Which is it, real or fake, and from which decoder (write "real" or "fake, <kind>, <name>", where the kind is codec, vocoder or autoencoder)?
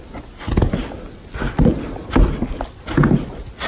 real